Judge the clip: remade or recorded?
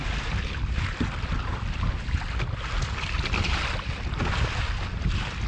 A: recorded